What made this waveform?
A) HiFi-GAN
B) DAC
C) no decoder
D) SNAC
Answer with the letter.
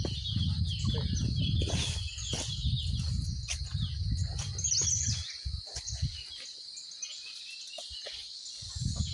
C